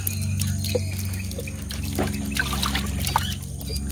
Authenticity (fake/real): real